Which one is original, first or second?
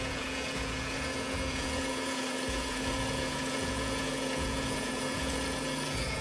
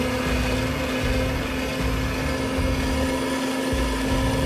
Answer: second